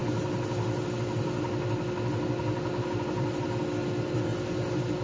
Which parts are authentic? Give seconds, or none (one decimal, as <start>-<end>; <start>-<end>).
0.0-5.0